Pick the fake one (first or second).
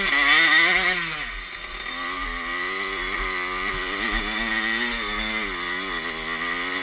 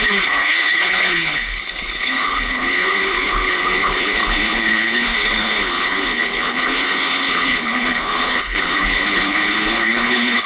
second